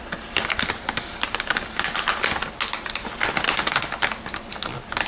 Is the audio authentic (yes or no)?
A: yes